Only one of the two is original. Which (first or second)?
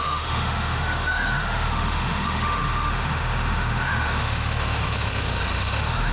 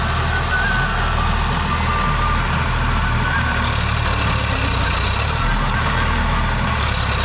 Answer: second